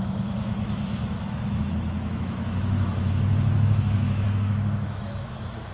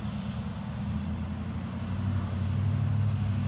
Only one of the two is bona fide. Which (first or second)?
second